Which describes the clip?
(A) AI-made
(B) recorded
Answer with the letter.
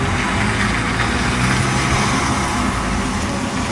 B